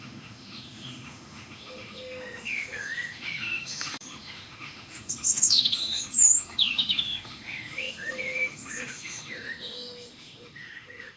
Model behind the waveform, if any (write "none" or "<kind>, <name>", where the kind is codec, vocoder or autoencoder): autoencoder, DAC-VAE